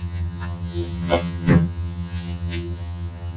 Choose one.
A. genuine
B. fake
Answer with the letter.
B